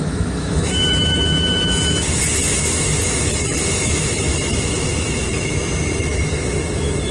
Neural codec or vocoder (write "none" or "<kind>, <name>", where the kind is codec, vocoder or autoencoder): autoencoder, DAC-VAE